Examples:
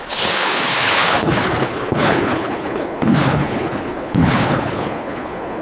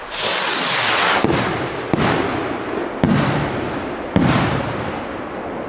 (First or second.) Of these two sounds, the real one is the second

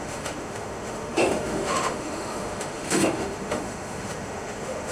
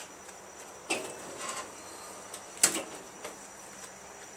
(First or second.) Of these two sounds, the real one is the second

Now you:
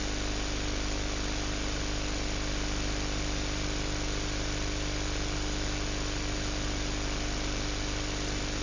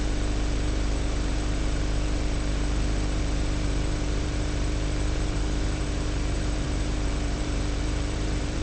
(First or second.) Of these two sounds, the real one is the first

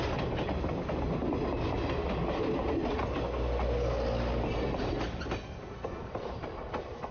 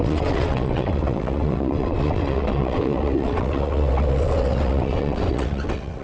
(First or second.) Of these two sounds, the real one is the first